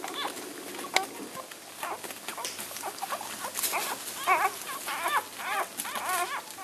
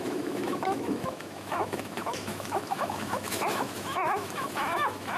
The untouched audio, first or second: first